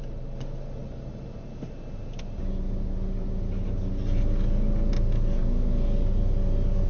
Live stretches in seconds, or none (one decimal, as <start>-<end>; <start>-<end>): 0.0-6.9